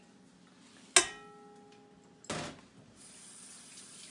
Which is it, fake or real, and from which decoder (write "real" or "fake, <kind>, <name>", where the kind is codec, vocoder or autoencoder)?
real